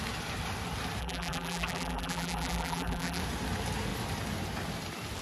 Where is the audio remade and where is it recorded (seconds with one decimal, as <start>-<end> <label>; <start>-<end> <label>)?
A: 0.0-1.0 recorded; 1.0-3.2 remade; 3.2-5.2 recorded